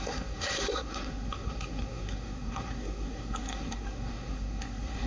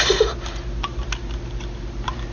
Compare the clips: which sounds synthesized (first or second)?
first